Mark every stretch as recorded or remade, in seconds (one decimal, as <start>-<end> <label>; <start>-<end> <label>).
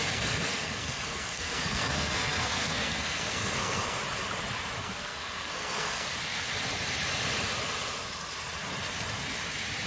0.0-4.0 remade; 4.0-4.8 recorded; 4.8-6.1 remade; 6.1-9.9 recorded